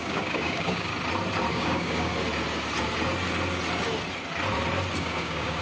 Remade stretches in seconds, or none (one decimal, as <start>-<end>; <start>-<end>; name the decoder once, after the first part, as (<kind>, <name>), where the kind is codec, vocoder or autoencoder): 0.0-0.9 (codec, DAC); 1.5-2.1; 5.0-5.6